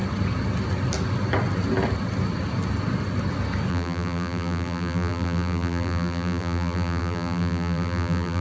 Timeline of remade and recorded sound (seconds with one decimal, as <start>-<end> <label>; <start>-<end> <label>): 0.0-3.7 recorded; 3.7-8.4 remade